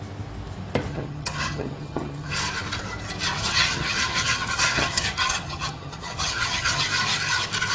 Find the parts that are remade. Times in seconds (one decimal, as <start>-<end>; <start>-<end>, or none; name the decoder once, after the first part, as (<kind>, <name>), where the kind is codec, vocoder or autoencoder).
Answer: 0.9-2.3 (vocoder, HiFi-GAN); 3.5-6.8